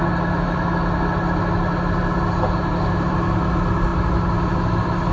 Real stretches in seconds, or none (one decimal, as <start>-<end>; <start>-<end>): 0.0-5.1